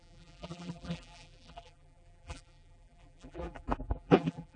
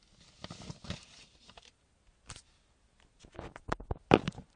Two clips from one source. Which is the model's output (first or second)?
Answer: first